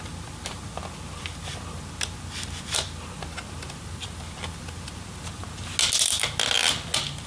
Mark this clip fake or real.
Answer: real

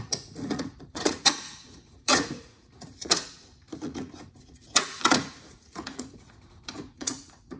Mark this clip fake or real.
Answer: fake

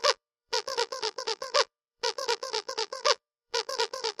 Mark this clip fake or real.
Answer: fake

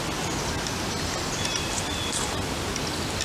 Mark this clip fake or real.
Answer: real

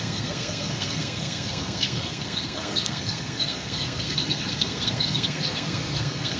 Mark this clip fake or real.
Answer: fake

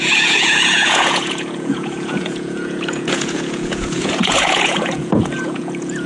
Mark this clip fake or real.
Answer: fake